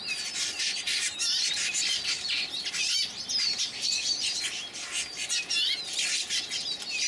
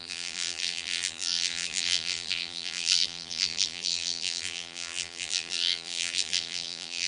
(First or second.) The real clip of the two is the first